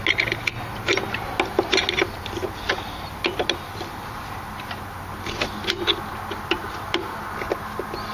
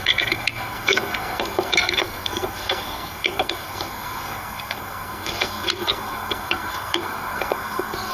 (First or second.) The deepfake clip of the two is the second